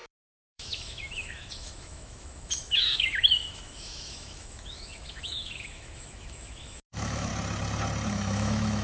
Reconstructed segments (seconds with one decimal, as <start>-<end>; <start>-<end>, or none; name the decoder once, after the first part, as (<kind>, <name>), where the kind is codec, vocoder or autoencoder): 0.0-7.3 (autoencoder, DAC-VAE); 8.1-8.8